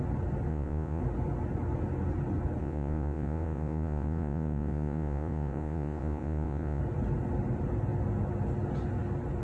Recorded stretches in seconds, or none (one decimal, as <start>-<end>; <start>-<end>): 0.0-0.5; 1.0-2.6; 6.8-9.4